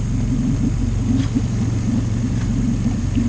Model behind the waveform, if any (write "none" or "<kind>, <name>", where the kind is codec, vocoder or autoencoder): none